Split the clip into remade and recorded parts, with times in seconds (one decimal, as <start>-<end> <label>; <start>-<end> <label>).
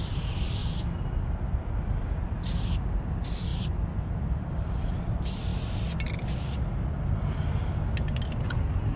0.0-0.6 remade; 0.6-1.8 recorded; 1.8-5.5 remade; 5.5-8.6 recorded; 8.6-9.0 remade